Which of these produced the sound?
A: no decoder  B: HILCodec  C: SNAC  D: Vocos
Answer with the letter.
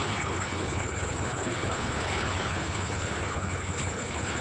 B